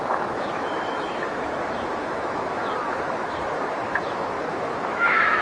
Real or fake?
fake